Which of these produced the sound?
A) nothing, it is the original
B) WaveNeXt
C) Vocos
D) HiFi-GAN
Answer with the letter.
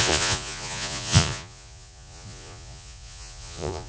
C